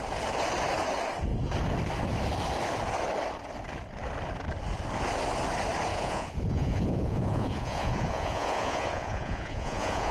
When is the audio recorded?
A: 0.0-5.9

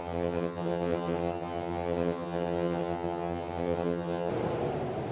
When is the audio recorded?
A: 4.3-5.1

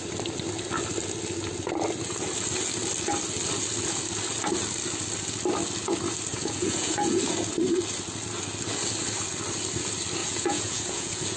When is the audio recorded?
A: 0.0-6.3; 7.2-10.2

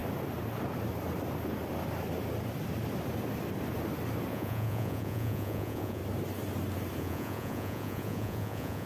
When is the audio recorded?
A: 0.0-4.3; 6.0-7.0

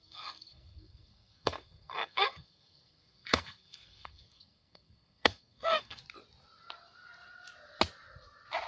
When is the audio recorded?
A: 6.0-8.7

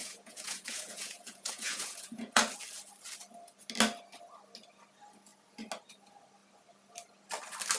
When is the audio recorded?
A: 2.4-7.8

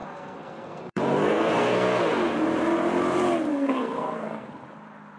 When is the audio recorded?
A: 2.0-3.5; 4.5-5.2